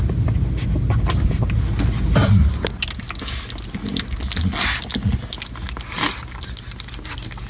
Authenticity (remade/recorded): recorded